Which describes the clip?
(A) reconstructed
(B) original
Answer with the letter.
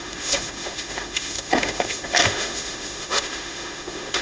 A